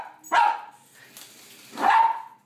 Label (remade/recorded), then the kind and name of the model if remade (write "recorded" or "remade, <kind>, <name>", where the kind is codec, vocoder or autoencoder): recorded